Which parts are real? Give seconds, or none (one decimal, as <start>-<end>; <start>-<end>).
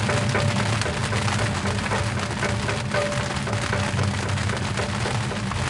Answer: 0.0-5.7